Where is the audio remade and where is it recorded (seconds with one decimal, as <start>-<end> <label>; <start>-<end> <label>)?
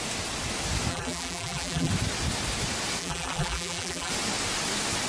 0.0-0.9 recorded; 0.9-1.9 remade; 1.9-3.0 recorded; 3.0-4.1 remade; 4.1-5.1 recorded